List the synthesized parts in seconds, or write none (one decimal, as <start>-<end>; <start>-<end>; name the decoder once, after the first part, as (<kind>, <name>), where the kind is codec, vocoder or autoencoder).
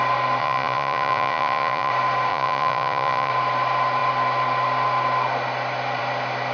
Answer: 0.4-1.9 (vocoder, Vocos); 2.3-3.3